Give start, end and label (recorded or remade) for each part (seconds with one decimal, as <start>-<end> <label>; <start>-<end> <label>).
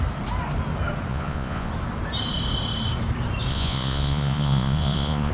0.0-1.1 recorded; 1.1-1.7 remade; 1.7-3.5 recorded; 3.5-5.3 remade